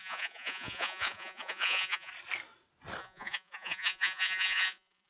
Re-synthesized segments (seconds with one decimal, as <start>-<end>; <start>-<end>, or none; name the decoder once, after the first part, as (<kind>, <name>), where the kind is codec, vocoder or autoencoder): 0.0-2.1 (vocoder, Vocos); 3.0-5.1